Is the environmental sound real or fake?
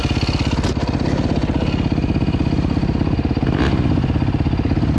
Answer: real